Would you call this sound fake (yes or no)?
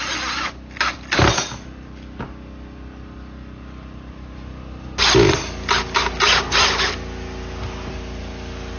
no